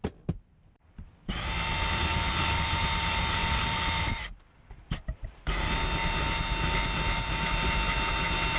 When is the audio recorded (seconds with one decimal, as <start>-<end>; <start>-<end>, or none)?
0.0-3.4; 5.7-8.6